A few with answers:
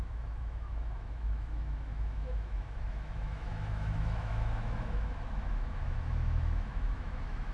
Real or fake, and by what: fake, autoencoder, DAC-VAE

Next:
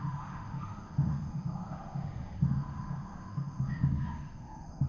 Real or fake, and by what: fake, autoencoder, DAC-VAE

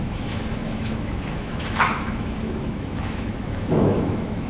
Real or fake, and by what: fake, autoencoder, DAC-VAE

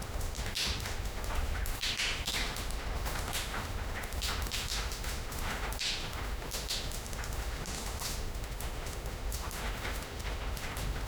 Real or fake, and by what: fake, autoencoder, DAC-VAE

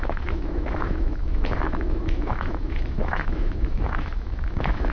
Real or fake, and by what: fake, autoencoder, DAC-VAE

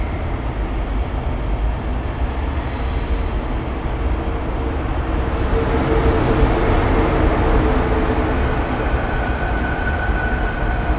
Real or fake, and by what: real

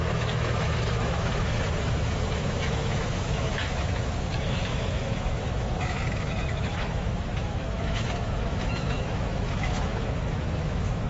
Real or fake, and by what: fake, autoencoder, DAC-VAE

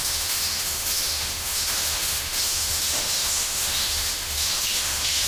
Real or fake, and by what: fake, autoencoder, DAC-VAE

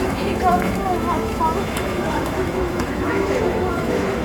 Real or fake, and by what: fake, autoencoder, DAC-VAE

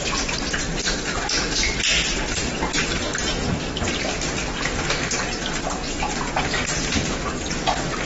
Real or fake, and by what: real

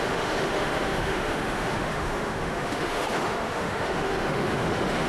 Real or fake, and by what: fake, autoencoder, DAC-VAE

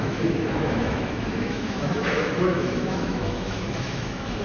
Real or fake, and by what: fake, autoencoder, DAC-VAE